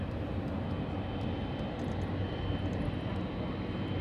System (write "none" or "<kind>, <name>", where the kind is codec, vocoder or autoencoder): none